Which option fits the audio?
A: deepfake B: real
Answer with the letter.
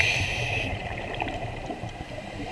A